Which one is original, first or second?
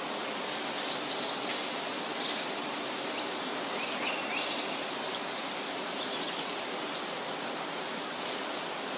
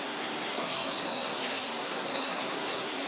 first